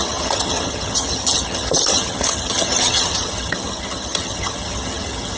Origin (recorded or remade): remade